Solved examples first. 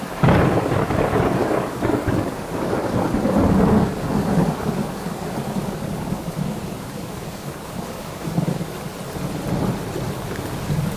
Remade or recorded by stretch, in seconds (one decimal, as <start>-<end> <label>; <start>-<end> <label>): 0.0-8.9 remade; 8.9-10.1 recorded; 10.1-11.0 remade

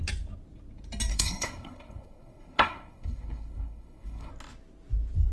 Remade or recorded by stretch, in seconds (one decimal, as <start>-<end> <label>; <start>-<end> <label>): 0.0-1.1 recorded; 1.1-4.3 remade; 4.3-5.3 recorded

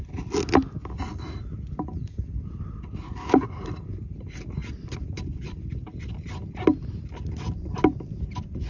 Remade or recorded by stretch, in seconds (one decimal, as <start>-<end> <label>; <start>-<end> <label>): 0.0-8.7 recorded

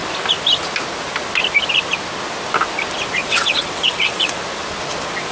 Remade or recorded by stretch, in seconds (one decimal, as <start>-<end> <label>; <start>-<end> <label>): 0.0-3.2 recorded; 3.2-4.3 remade; 4.3-5.3 recorded